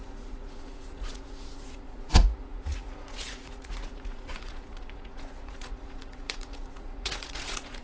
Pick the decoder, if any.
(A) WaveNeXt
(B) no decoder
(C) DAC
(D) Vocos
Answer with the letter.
D